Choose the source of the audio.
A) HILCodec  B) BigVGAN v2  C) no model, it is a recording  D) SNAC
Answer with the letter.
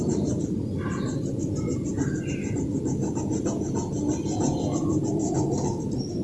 C